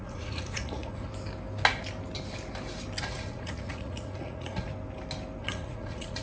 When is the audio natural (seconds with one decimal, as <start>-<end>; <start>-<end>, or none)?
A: 1.1-3.0; 4.7-5.4